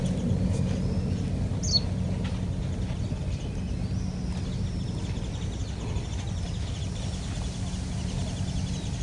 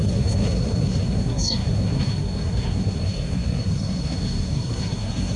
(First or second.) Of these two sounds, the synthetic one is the second